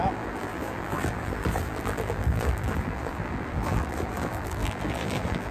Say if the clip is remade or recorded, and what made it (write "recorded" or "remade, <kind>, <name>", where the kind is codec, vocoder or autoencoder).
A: remade, vocoder, BigVGAN v2